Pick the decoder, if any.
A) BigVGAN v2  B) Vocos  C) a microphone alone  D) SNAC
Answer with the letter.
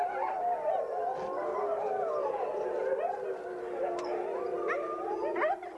A